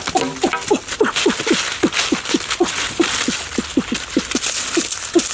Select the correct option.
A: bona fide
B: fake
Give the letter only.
A